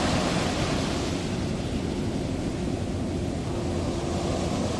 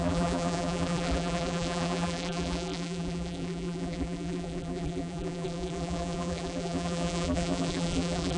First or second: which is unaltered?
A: first